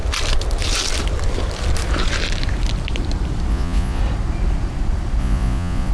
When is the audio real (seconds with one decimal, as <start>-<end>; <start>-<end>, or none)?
0.0-3.5; 4.0-5.2